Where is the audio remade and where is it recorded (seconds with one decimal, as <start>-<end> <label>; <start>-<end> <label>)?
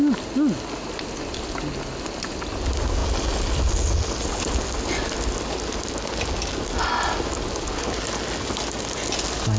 0.0-9.6 recorded